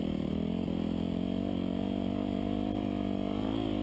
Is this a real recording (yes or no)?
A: yes